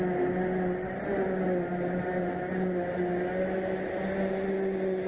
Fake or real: real